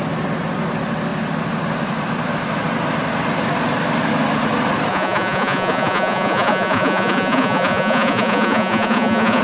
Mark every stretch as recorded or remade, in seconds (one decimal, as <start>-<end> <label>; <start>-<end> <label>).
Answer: 0.0-4.9 recorded; 4.9-9.4 remade